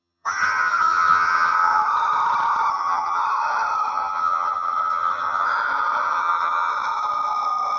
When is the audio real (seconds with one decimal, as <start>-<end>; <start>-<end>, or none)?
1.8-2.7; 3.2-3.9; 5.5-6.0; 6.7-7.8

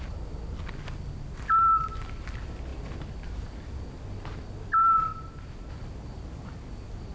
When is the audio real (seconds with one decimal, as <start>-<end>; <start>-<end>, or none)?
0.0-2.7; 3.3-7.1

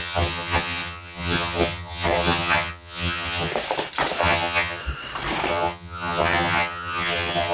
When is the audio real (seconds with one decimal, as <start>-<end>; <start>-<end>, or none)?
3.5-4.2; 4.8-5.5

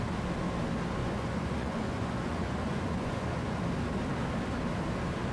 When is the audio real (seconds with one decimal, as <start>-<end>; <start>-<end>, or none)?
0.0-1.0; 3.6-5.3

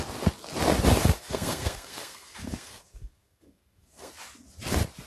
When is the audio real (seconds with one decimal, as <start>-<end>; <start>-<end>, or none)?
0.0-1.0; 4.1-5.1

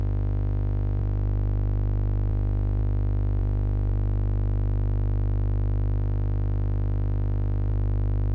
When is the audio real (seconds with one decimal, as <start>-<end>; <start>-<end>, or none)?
0.0-1.0; 2.3-8.3

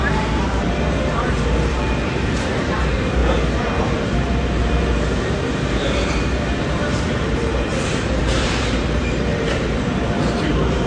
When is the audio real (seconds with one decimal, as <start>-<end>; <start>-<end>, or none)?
3.2-3.8